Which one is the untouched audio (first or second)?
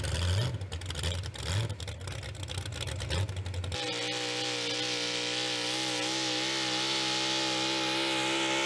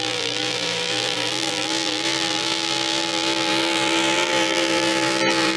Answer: first